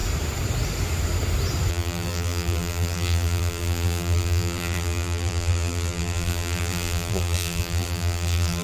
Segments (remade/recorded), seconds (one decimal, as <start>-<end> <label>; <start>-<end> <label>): 0.0-1.7 recorded; 1.7-8.6 remade